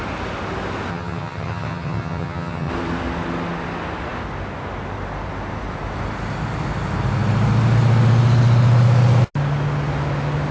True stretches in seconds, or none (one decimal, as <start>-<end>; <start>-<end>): 0.0-0.9; 2.7-10.5